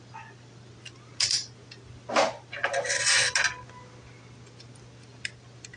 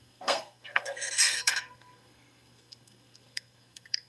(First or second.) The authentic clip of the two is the first